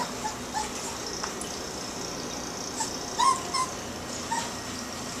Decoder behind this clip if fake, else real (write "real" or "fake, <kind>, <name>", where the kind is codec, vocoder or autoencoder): real